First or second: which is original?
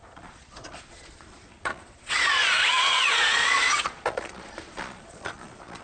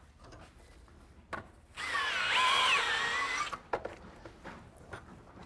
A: second